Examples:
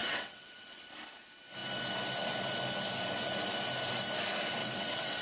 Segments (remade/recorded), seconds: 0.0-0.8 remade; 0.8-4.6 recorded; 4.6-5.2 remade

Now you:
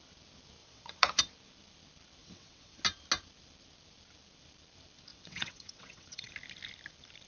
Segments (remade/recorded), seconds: 0.0-0.6 recorded; 0.6-1.2 remade; 1.2-2.2 recorded; 2.2-2.8 remade; 2.8-5.1 recorded; 5.1-6.3 remade; 6.3-7.3 recorded